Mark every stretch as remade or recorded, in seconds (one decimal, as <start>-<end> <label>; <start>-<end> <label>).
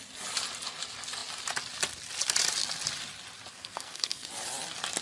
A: 0.0-3.5 recorded; 3.5-4.3 remade; 4.3-5.0 recorded